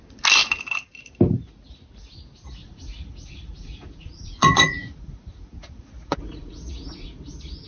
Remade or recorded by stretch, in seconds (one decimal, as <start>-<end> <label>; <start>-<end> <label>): 0.0-2.6 recorded; 2.6-7.2 remade; 7.2-7.7 recorded